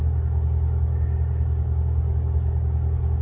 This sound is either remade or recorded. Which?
recorded